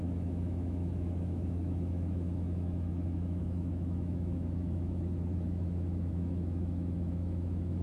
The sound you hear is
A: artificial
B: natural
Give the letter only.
A